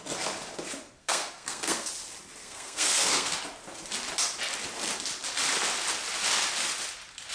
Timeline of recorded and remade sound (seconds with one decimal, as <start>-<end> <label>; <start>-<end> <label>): 0.0-1.0 recorded; 1.0-1.9 remade; 1.9-2.4 recorded; 2.4-3.3 remade; 3.3-7.3 recorded